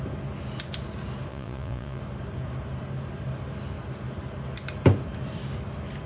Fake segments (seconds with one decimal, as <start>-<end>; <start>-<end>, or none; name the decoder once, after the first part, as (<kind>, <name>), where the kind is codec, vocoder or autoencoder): 1.3-2.0 (vocoder, Vocos)